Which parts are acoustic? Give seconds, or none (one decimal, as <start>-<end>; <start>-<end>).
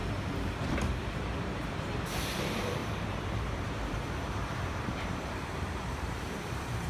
0.0-0.6